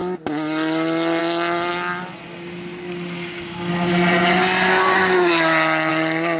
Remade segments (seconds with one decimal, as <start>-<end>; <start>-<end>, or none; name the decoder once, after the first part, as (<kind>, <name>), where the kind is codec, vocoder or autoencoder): none